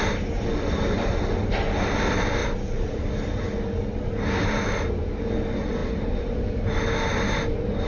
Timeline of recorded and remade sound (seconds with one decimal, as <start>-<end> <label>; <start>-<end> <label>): 0.0-2.4 recorded; 2.4-3.1 remade; 3.1-5.8 recorded; 5.8-6.8 remade; 6.8-7.9 recorded